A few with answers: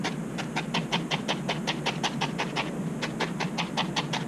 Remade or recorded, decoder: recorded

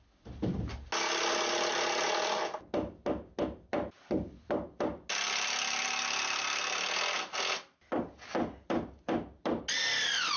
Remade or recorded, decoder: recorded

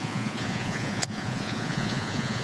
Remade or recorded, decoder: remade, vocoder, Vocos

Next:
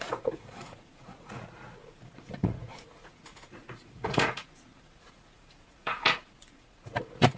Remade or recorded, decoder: remade, vocoder, Vocos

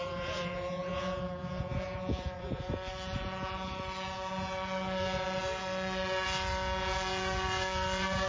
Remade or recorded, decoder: remade, vocoder, Vocos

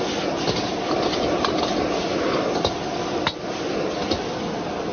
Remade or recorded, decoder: recorded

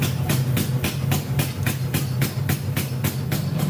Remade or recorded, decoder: recorded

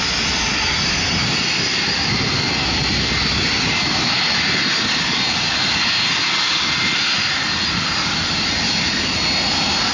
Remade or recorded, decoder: recorded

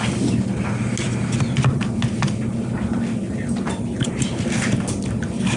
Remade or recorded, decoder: recorded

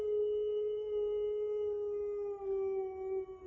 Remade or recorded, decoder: recorded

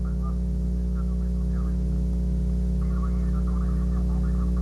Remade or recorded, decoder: recorded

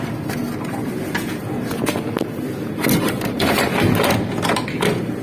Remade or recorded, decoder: recorded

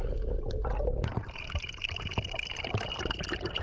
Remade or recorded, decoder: recorded